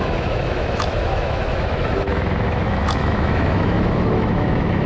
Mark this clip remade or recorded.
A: remade